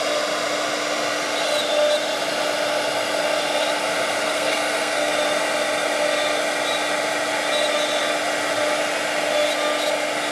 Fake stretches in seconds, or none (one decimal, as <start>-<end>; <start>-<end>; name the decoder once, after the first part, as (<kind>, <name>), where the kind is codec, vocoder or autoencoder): 4.2-5.1 (codec, SNAC)